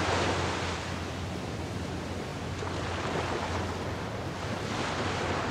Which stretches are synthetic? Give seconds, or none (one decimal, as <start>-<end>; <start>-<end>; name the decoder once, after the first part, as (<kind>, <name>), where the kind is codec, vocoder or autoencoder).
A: none